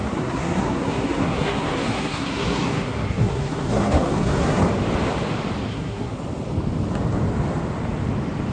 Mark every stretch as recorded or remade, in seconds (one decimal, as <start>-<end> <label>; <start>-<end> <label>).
0.0-4.6 remade; 4.6-5.7 recorded; 5.7-6.2 remade; 6.2-8.5 recorded